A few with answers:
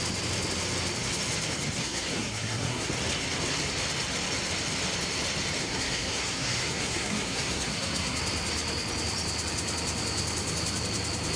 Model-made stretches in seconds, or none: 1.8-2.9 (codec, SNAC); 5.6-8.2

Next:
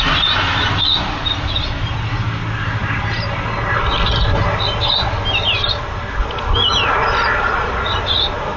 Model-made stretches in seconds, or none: none

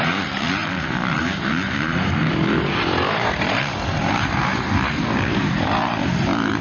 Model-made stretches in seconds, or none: 0.0-6.6 (vocoder, BigVGAN v2)

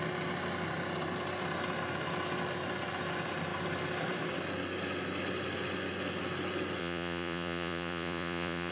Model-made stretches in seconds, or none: 6.8-8.7 (vocoder, Vocos)

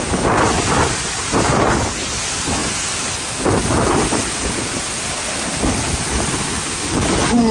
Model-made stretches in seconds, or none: none

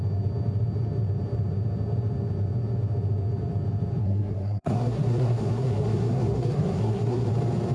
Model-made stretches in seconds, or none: 4.0-7.3 (codec, SNAC)

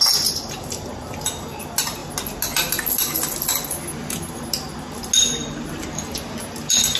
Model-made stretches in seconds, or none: none